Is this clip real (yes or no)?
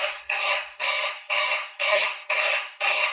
no